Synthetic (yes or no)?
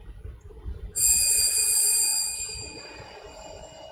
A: no